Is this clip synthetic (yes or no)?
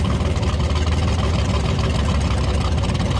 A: no